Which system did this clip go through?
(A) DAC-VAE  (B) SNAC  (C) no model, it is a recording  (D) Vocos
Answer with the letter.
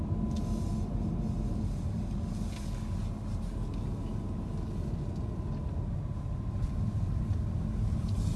C